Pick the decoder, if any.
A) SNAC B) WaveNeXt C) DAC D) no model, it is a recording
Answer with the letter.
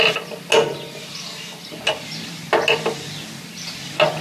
D